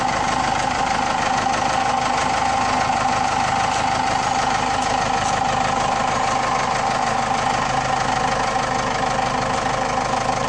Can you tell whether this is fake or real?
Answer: real